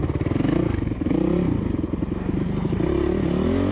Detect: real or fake real